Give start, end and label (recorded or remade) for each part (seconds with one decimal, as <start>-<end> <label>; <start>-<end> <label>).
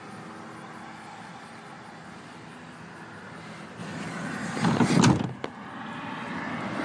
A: 0.0-3.8 recorded; 3.8-5.0 remade; 5.0-6.8 recorded